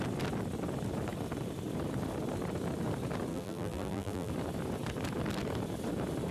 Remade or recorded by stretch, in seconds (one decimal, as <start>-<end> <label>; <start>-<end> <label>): 0.0-3.3 recorded; 3.3-4.3 remade; 4.3-6.3 recorded